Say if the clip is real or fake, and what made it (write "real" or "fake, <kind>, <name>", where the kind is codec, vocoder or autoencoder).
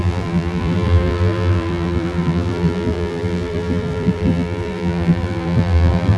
fake, vocoder, BigVGAN v2